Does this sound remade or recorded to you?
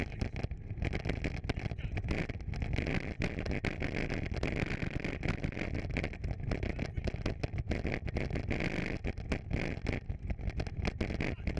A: recorded